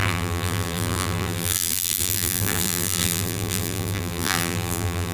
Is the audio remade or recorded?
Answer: remade